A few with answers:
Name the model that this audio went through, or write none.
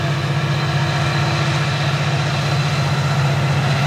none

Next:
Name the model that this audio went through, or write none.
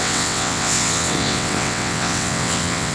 vocoder, WaveNeXt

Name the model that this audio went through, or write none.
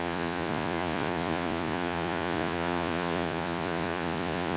vocoder, Vocos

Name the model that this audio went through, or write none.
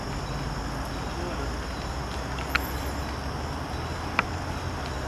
none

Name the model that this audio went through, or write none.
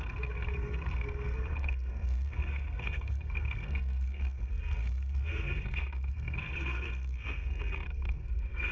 codec, SNAC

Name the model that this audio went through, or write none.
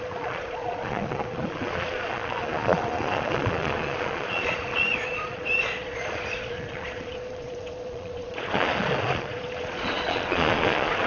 vocoder, Vocos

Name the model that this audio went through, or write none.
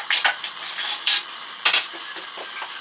none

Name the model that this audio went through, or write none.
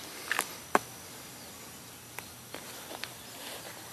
none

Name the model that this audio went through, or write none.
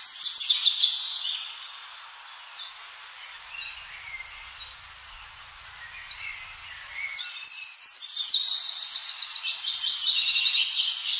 none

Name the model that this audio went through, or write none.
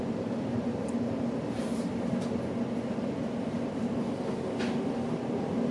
none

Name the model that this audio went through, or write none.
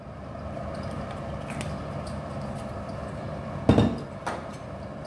none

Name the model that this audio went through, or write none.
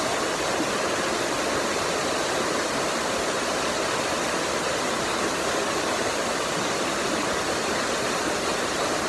none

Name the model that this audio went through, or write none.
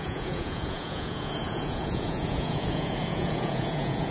vocoder, Vocos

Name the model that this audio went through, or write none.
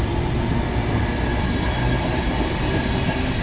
none